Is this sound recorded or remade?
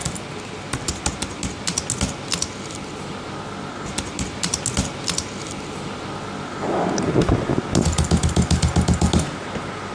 recorded